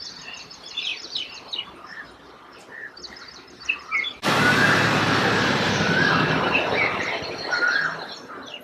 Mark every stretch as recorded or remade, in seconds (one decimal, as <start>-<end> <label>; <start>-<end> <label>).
0.0-0.9 recorded; 0.9-2.0 remade; 2.0-2.5 recorded; 2.5-7.2 remade; 7.2-8.6 recorded